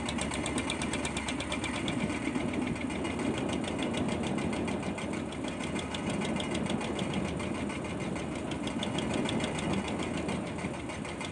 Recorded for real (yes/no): yes